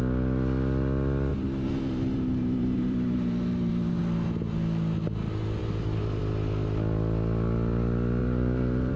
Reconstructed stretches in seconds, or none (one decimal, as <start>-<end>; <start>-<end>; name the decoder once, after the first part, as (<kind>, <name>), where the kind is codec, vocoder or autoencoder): 1.3-4.0 (vocoder, BigVGAN v2); 5.6-6.2; 8.2-9.0